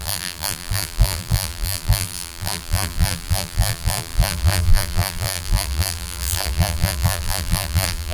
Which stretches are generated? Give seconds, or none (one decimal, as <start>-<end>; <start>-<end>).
0.0-8.1